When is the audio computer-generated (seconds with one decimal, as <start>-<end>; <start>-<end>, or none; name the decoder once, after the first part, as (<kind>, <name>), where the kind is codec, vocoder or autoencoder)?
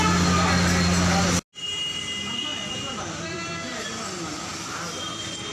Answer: none